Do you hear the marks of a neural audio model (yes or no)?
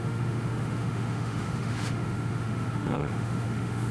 yes